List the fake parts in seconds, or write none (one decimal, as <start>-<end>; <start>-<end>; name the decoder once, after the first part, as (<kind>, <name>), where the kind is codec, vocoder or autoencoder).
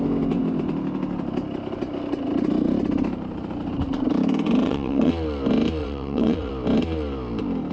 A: 4.6-5.1 (vocoder, WaveNeXt); 5.8-6.5